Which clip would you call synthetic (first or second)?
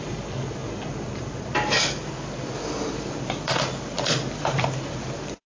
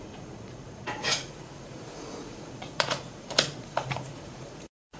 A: second